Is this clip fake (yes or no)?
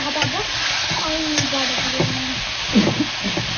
no